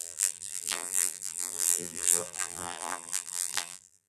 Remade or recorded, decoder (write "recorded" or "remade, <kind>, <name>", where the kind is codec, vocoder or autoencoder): remade, vocoder, BigVGAN v2